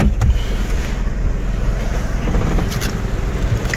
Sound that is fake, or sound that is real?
real